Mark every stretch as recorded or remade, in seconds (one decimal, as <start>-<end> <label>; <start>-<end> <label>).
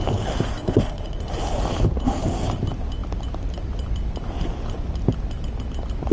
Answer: 0.0-0.6 recorded; 0.6-1.2 remade; 1.2-6.1 recorded